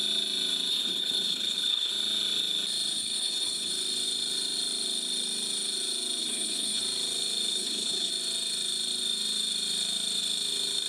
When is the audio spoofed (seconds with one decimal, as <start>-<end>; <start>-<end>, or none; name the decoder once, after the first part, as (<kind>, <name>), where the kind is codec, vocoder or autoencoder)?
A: 0.7-1.9 (codec, HILCodec); 2.9-3.7; 6.2-6.8; 7.5-8.1